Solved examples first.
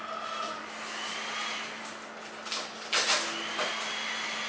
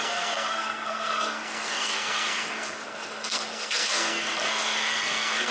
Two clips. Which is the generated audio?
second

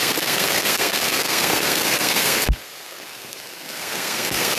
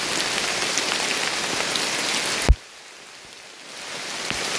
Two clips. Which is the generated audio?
first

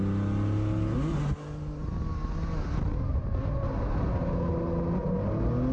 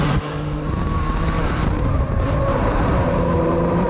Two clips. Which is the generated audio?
second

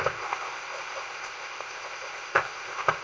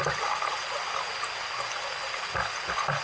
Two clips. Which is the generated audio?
first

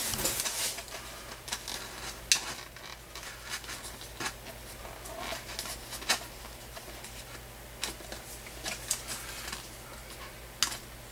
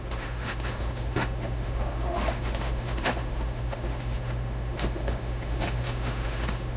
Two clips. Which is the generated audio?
second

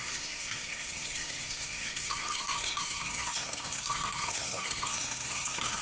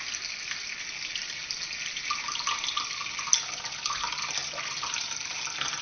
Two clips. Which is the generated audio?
first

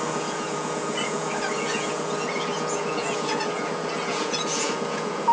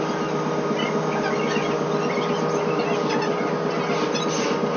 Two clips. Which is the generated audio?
first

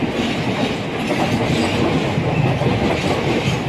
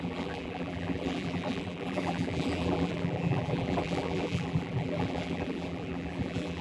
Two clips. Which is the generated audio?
second